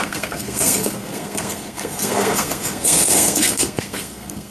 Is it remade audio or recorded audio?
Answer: remade